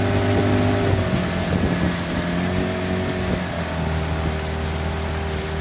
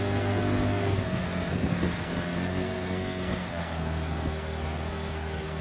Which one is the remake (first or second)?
second